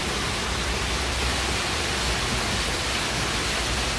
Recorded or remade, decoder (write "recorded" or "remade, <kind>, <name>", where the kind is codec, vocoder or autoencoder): recorded